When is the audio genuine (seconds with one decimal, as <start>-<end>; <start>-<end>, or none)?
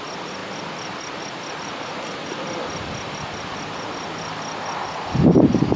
0.0-5.8